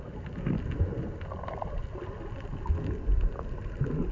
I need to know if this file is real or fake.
real